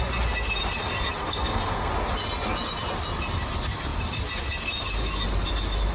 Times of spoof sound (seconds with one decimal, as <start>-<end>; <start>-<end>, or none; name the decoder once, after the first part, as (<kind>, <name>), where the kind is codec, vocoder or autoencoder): 1.2-1.9 (codec, SNAC)